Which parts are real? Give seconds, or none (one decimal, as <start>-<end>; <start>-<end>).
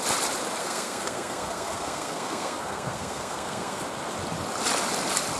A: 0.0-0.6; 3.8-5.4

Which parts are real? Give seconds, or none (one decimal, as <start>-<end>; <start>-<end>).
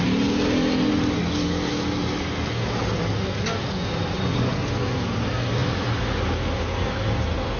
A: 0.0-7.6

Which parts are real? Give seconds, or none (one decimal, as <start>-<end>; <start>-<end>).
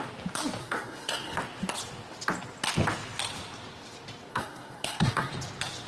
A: 0.0-0.6; 1.4-4.3; 5.3-5.9